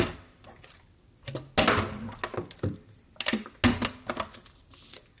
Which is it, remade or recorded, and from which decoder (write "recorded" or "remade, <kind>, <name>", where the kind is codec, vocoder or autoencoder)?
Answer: recorded